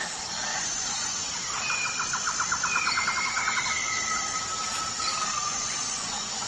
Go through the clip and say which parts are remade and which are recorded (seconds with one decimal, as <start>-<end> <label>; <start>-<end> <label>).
0.0-0.5 recorded; 0.5-1.3 remade; 1.3-5.4 recorded; 5.4-6.5 remade